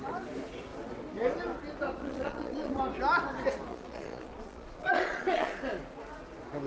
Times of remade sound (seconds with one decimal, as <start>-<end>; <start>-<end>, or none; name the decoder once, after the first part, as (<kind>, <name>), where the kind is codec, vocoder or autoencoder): 2.0-2.8 (vocoder, Vocos); 3.7-5.5

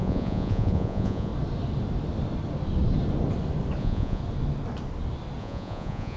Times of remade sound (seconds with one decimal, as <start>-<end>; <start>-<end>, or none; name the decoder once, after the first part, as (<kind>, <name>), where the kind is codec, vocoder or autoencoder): 0.0-1.3 (vocoder, Vocos); 3.8-4.2; 5.4-6.2

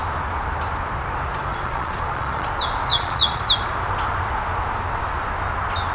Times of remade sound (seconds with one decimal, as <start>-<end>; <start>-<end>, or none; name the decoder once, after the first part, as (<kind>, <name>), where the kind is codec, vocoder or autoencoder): 1.5-2.5 (vocoder, Vocos); 2.9-3.4